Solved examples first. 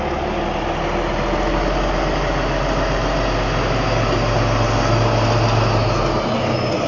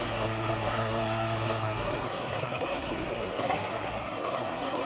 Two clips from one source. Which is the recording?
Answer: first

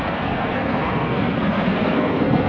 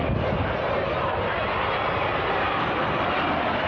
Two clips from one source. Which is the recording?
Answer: second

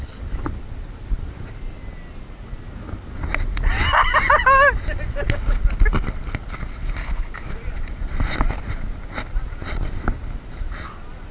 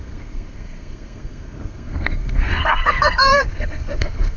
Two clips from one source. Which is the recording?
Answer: first